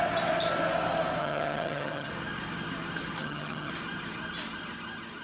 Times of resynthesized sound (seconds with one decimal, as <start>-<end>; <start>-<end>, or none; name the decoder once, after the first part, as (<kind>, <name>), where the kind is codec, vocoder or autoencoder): 1.2-2.1 (vocoder, HiFi-GAN); 3.2-3.7